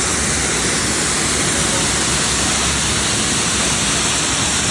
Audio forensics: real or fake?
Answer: real